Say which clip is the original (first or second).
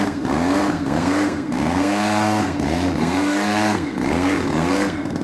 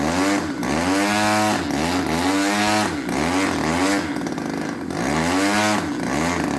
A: second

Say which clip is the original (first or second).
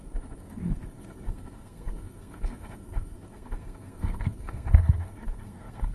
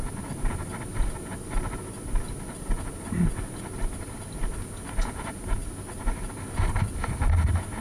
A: second